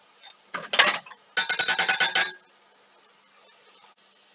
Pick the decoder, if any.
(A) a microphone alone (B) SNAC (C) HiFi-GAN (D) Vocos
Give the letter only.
A